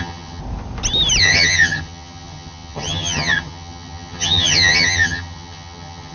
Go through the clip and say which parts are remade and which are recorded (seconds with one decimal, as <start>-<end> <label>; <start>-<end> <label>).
0.0-0.4 remade; 0.4-1.2 recorded; 1.2-6.1 remade